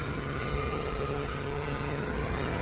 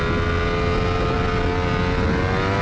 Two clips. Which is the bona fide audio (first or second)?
second